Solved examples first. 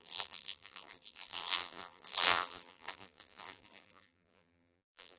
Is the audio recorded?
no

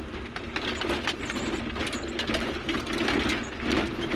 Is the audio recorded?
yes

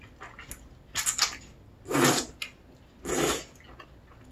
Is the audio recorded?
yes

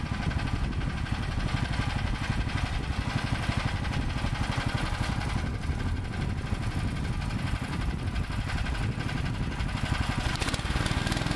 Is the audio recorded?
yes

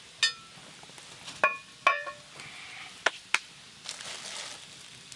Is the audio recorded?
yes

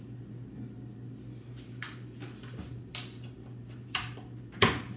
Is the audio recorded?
yes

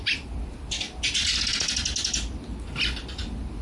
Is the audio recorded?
yes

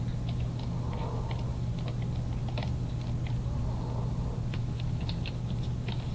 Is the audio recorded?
yes